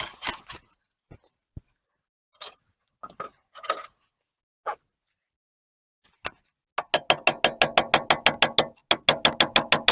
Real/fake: real